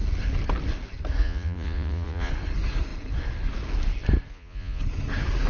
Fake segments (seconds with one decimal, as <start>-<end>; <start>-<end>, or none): 1.2-2.3; 4.3-4.8